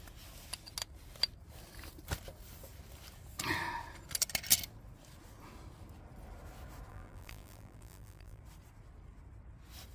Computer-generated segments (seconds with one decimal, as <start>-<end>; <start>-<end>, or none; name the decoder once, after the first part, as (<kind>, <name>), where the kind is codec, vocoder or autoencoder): 6.9-8.4 (vocoder, BigVGAN v2)